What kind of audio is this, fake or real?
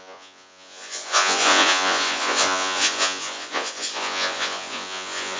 fake